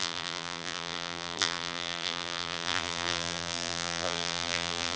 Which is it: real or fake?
fake